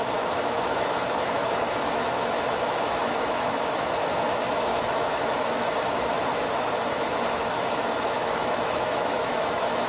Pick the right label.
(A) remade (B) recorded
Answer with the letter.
A